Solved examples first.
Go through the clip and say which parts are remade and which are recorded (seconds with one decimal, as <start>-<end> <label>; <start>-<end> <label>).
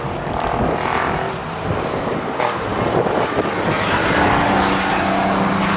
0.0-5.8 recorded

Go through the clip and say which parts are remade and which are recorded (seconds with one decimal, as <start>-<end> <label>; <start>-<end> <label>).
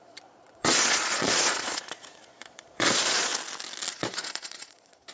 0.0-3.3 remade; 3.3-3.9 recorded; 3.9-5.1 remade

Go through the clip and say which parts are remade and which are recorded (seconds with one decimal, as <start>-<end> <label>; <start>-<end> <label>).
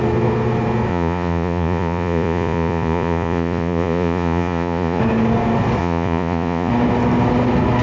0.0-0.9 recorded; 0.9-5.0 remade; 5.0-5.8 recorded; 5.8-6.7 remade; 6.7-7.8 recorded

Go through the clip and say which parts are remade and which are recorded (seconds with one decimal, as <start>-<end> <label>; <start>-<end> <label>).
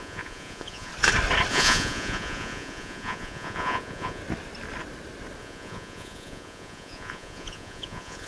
0.0-0.9 remade; 0.9-1.5 recorded; 1.5-4.2 remade; 4.2-5.4 recorded; 5.4-8.3 remade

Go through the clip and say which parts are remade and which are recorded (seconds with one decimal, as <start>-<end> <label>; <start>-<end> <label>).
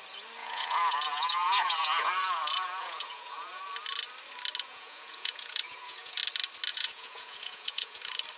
0.0-0.4 recorded; 0.4-3.6 remade; 3.6-4.7 recorded; 4.7-6.2 remade; 6.2-6.7 recorded; 6.7-8.0 remade; 8.0-8.4 recorded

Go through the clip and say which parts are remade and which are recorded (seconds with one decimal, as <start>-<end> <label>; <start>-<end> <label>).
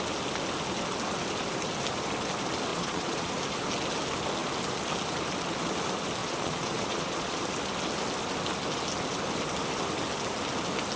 0.0-2.7 recorded; 2.7-3.3 remade; 3.3-6.2 recorded; 6.2-7.4 remade; 7.4-11.0 recorded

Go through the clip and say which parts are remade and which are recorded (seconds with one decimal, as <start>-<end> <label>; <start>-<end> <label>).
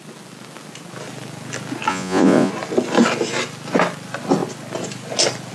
0.0-1.9 recorded; 1.9-2.5 remade; 2.5-5.5 recorded